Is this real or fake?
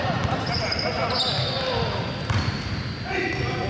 real